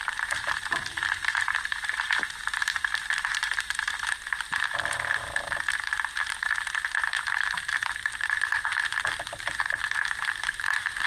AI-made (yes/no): yes